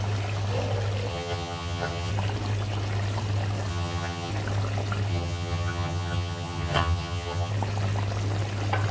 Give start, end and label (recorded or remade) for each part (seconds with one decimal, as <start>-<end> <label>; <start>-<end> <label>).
0.0-1.1 recorded; 1.1-2.1 remade; 2.1-3.7 recorded; 3.7-4.3 remade; 4.3-5.1 recorded; 5.1-7.5 remade; 7.5-8.9 recorded